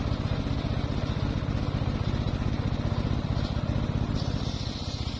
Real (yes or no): yes